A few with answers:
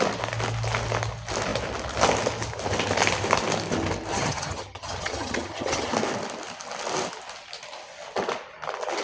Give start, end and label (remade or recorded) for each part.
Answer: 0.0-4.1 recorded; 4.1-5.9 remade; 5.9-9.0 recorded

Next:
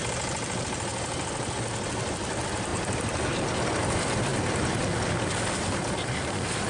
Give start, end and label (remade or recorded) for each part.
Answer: 0.0-6.7 recorded

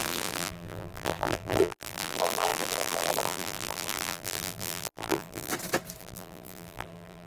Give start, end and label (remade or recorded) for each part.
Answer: 0.0-5.5 remade; 5.5-6.0 recorded; 6.0-7.3 remade

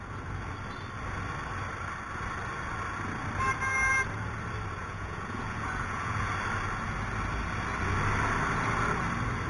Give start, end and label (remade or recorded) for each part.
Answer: 0.0-4.8 recorded; 4.8-6.3 remade; 6.3-9.5 recorded

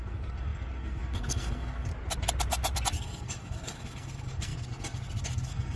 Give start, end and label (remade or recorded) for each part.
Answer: 0.0-1.9 remade; 1.9-2.9 recorded; 2.9-5.8 remade